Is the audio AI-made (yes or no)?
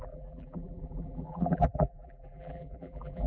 yes